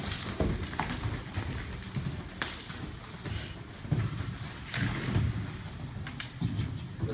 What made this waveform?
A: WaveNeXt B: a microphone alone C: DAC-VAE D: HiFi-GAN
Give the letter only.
B